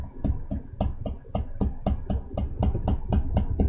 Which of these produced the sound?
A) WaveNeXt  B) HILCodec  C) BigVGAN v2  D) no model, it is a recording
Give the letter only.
D